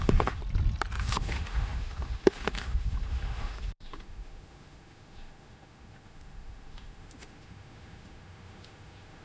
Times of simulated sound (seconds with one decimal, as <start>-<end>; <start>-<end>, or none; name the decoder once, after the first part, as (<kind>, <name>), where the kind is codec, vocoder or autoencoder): 0.0-0.4 (autoencoder, DAC-VAE); 1.0-9.2